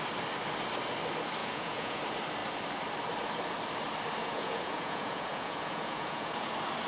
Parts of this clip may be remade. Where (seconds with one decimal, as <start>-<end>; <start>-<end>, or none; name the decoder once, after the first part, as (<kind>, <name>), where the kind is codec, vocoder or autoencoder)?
1.4-2.0 (vocoder, Vocos); 4.2-6.5